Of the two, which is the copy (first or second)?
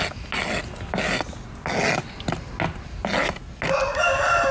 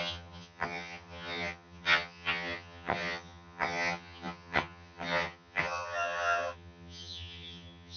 second